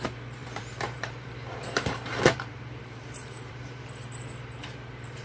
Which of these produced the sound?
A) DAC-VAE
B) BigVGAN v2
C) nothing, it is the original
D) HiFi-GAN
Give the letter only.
B